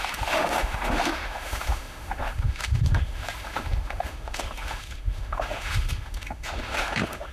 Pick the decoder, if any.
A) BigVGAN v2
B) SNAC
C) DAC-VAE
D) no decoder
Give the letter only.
C